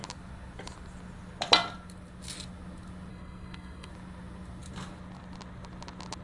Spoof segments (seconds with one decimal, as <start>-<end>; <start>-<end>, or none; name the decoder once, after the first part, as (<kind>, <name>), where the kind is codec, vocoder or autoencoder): 3.1-3.9 (codec, SNAC)